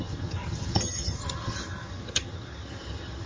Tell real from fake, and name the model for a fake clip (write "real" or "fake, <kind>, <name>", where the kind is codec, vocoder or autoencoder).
fake, vocoder, HiFi-GAN